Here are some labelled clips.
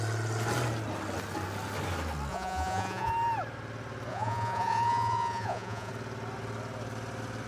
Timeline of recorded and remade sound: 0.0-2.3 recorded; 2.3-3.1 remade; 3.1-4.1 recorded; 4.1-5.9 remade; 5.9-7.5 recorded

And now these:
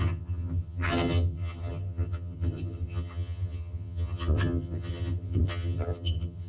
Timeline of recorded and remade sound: 0.0-6.5 remade

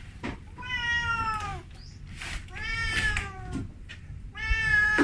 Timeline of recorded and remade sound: 0.0-1.5 remade; 1.5-2.1 recorded; 2.1-5.0 remade

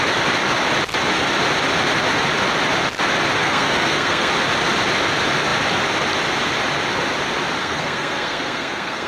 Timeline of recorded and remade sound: 0.0-3.4 recorded; 3.4-4.3 remade; 4.3-7.6 recorded; 7.6-9.1 remade

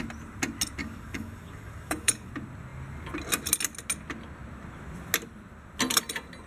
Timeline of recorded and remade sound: 0.0-0.8 recorded; 0.8-2.3 remade; 2.3-6.5 recorded

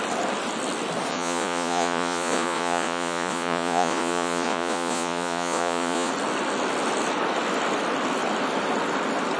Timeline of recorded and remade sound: 0.0-1.1 recorded; 1.1-6.1 remade; 6.1-9.4 recorded

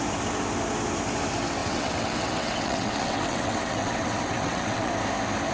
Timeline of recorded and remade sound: 0.0-1.6 recorded; 1.6-4.9 remade; 4.9-5.5 recorded